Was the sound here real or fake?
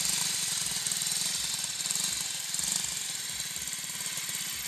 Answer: real